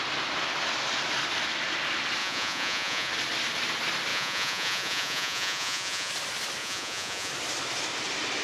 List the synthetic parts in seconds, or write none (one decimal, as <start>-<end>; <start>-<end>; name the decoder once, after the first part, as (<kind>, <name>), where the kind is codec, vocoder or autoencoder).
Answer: 2.2-3.1 (vocoder, Vocos); 4.1-6.1; 6.6-7.3